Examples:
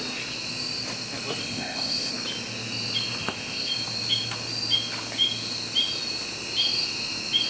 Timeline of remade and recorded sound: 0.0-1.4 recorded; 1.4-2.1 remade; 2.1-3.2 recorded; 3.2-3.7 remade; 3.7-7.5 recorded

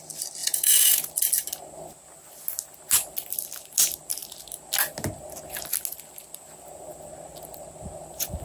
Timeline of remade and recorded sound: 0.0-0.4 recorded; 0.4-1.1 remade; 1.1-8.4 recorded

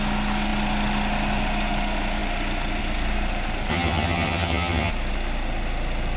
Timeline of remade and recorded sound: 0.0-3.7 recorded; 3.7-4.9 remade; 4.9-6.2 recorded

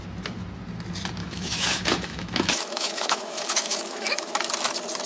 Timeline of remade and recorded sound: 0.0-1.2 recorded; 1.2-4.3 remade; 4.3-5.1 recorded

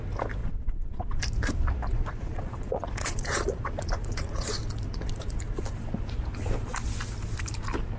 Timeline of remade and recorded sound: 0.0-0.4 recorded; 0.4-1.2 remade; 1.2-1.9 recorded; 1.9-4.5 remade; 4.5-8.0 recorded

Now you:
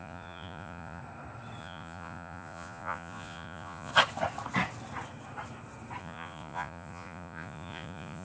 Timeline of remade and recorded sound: 0.0-1.0 remade; 1.0-1.6 recorded; 1.6-3.9 remade; 3.9-6.0 recorded; 6.0-8.2 remade

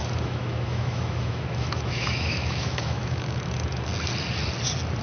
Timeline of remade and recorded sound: 0.0-3.9 remade; 3.9-5.0 recorded